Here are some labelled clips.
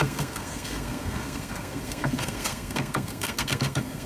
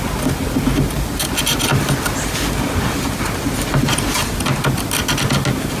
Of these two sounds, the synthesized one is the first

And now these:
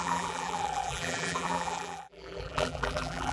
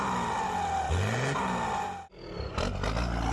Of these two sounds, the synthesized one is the first